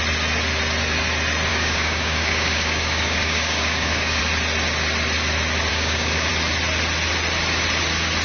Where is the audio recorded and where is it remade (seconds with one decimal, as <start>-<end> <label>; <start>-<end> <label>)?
0.0-1.5 recorded; 1.5-4.2 remade; 4.2-5.7 recorded; 5.7-6.3 remade; 6.3-8.2 recorded